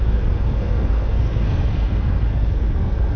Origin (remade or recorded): remade